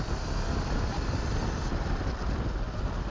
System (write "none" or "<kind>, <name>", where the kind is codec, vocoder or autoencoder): none